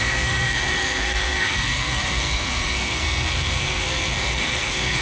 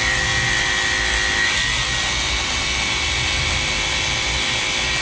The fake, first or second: first